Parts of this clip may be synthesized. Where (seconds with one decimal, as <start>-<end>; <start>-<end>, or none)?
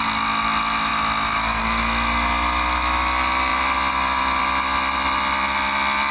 none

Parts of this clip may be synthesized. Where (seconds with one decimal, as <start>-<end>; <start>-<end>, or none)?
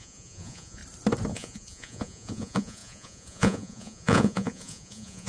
0.0-0.8; 1.3-5.3